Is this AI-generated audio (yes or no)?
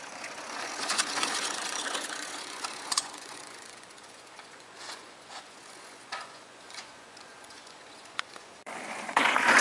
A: yes